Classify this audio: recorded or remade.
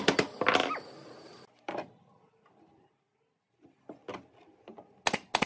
recorded